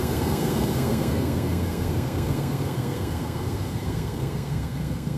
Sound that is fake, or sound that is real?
fake